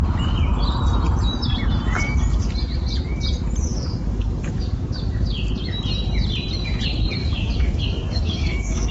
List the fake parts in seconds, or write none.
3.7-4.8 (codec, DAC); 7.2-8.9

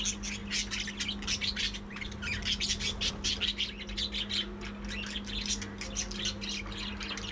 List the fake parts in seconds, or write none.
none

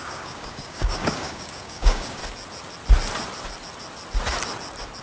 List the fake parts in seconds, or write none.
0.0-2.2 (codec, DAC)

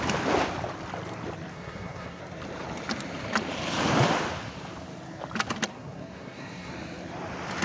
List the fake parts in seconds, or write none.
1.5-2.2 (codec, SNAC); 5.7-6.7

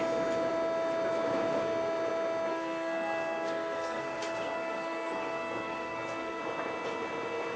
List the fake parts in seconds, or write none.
2.5-6.4 (codec, SNAC)